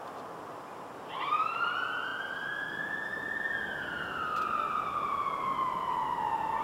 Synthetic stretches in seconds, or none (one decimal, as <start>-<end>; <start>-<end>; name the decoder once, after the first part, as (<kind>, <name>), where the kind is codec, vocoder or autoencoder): 3.1-6.6 (vocoder, BigVGAN v2)